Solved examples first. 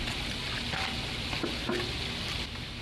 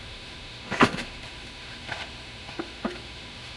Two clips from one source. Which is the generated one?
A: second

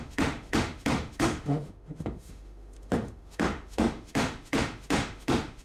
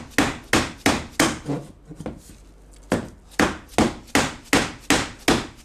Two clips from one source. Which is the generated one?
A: first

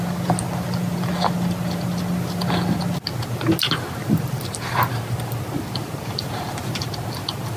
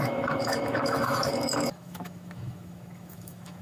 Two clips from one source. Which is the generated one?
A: second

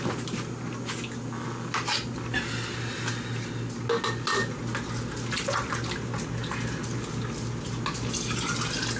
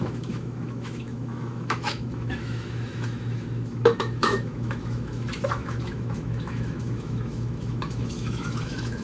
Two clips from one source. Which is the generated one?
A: second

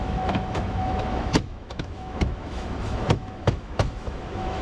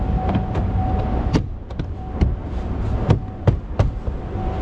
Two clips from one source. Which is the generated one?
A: first